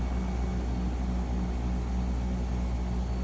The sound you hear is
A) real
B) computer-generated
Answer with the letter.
A